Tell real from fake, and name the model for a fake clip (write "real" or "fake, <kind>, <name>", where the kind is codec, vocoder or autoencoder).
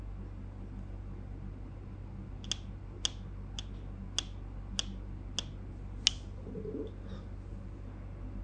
real